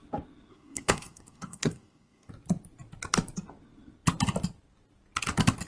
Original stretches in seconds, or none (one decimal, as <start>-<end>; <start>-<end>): 0.0-0.5; 2.3-5.7

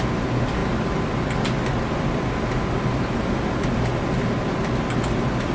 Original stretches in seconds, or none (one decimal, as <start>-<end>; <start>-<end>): 0.0-5.5

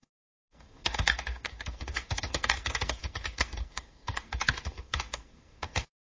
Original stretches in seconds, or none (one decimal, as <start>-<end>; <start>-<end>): none

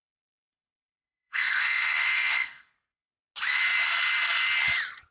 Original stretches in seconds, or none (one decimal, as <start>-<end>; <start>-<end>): 3.1-5.1

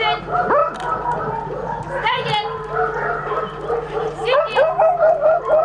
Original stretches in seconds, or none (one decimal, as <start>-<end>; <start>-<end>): 0.0-5.6

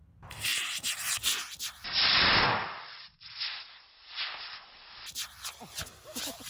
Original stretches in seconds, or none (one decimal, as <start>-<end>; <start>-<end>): 0.0-6.5

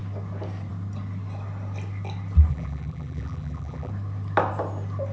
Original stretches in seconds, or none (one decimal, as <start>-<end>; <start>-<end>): 0.0-2.5; 3.9-5.1

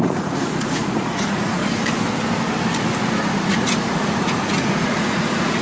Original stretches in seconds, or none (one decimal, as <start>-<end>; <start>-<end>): 1.6-3.0